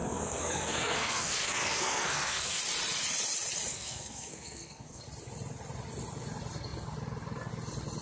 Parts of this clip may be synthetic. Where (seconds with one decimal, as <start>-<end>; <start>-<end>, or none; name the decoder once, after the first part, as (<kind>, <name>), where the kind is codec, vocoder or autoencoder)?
0.0-2.6 (codec, SNAC); 3.7-5.0